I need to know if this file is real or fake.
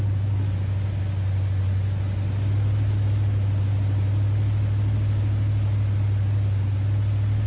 real